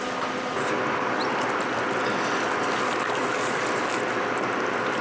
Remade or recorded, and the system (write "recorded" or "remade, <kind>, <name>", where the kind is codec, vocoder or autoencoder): recorded